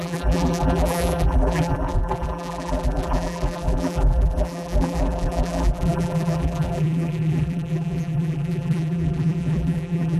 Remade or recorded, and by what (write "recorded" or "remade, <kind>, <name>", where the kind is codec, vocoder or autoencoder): remade, vocoder, BigVGAN v2